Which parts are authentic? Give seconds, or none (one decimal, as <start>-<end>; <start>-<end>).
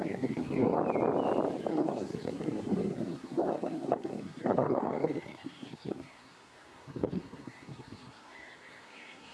0.8-1.7